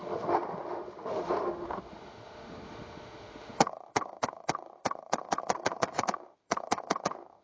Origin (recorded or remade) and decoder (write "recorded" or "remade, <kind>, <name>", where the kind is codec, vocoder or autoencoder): remade, autoencoder, DAC-VAE